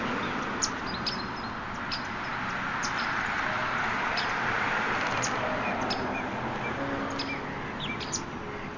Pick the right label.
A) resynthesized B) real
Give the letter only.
B